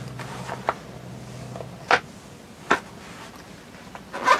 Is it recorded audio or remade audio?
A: recorded